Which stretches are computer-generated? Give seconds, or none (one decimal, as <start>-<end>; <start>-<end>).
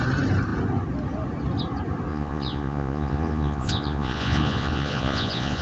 2.1-5.6